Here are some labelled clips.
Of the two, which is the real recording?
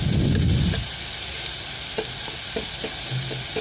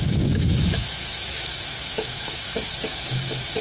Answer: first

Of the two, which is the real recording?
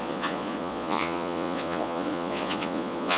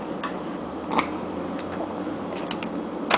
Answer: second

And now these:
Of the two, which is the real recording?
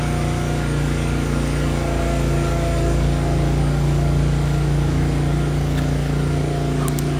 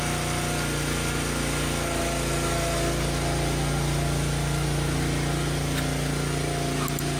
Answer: second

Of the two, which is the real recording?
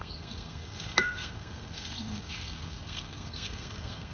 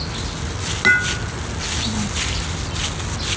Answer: second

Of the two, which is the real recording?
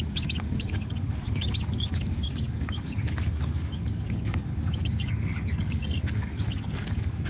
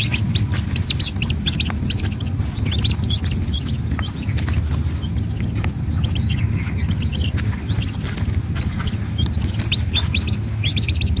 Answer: second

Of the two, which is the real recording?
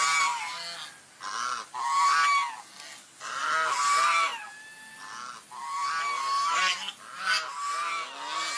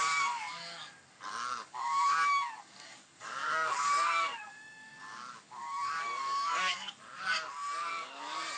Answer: first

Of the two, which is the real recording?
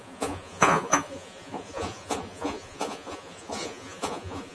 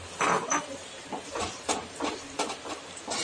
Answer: second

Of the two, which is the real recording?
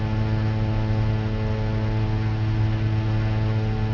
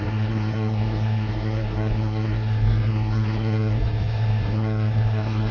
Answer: first